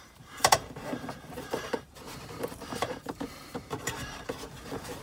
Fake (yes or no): yes